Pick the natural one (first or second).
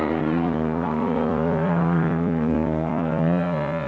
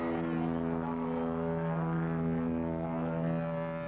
second